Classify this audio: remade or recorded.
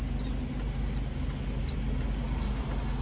recorded